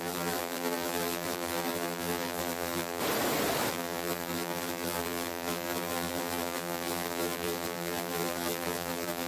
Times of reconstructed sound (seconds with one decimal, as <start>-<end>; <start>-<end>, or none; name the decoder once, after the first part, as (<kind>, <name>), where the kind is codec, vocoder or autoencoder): 0.0-3.0 (vocoder, BigVGAN v2); 3.7-9.3